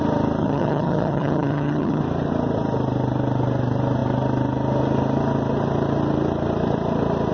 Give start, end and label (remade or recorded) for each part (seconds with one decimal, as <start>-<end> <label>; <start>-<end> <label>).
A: 0.0-0.4 recorded; 0.4-2.0 remade; 2.0-7.3 recorded